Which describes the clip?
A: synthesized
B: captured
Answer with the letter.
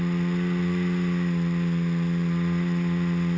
B